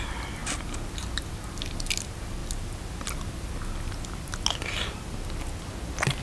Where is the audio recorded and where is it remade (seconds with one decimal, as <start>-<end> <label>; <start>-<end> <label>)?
0.0-6.2 recorded